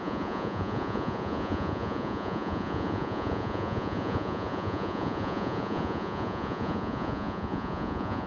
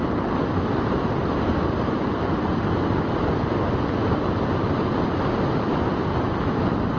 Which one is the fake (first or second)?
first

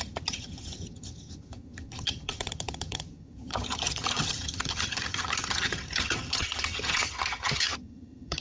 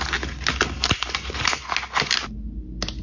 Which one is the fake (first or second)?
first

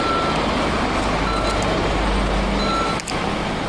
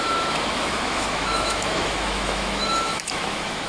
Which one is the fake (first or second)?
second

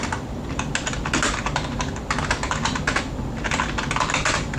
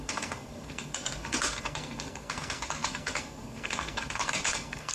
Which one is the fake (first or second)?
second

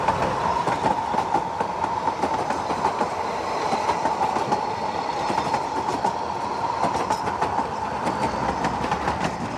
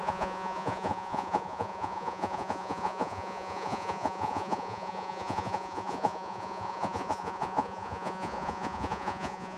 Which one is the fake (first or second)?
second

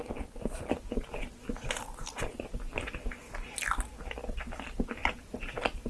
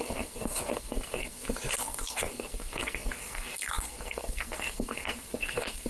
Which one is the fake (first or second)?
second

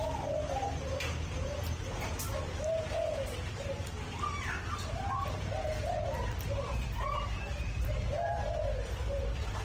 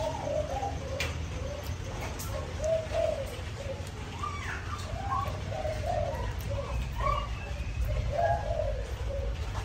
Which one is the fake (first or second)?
second